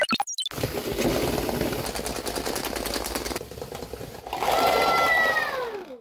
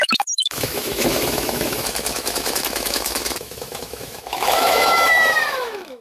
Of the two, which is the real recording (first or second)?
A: first